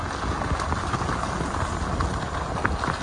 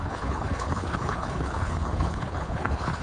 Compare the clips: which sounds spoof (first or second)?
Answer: second